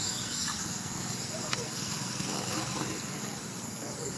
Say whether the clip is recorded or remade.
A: remade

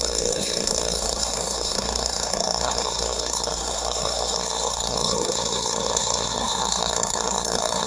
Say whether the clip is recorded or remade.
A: remade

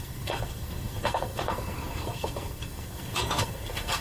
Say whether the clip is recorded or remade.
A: remade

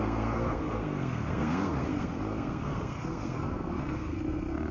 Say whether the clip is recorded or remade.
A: remade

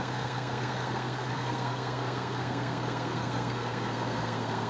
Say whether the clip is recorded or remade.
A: remade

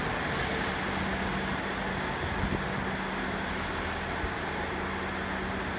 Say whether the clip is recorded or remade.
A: recorded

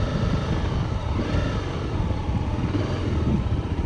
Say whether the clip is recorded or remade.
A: recorded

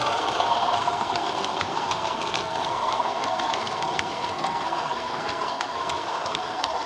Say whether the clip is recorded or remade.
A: remade